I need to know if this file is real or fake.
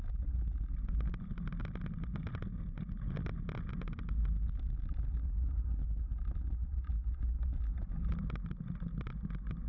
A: real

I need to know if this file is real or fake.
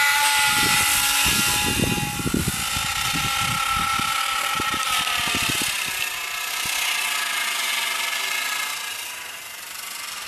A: real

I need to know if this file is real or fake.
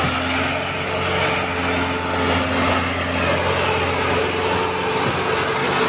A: real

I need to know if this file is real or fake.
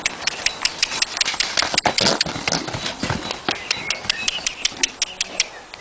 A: real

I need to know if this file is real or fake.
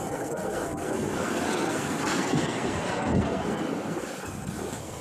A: fake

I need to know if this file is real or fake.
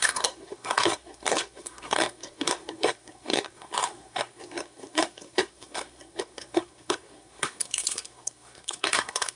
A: fake